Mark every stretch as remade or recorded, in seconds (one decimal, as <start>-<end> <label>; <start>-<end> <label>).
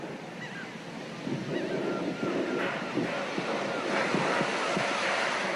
0.0-5.6 recorded